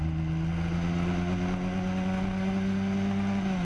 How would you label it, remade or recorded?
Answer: recorded